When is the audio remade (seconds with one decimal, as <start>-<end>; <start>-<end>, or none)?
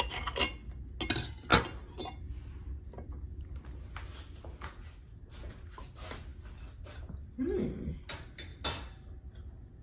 none